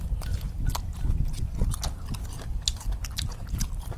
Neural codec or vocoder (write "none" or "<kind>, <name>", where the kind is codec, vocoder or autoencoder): none